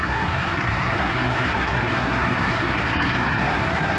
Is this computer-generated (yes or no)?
yes